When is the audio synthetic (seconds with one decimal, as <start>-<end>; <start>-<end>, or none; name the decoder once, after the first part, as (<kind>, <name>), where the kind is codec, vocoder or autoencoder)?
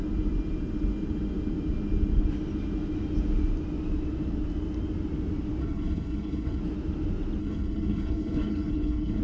5.6-6.6 (codec, HILCodec); 7.4-9.2